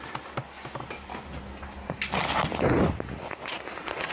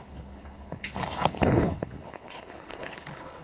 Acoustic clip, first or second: first